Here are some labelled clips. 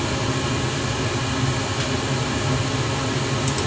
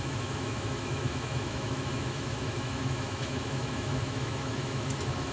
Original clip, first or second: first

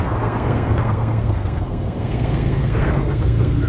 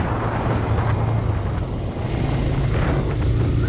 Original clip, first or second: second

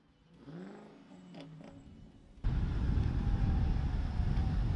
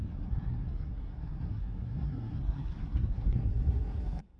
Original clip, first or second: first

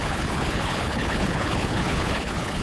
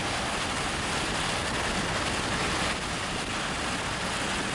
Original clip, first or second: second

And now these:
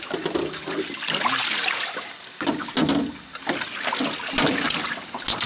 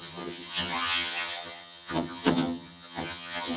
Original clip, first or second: first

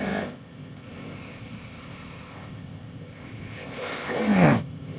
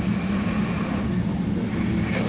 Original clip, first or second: second